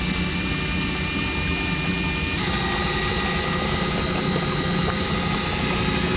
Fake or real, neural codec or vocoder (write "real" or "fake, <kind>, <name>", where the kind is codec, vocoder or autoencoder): real